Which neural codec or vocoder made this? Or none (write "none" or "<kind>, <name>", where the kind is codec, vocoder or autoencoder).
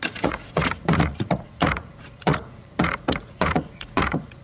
vocoder, Vocos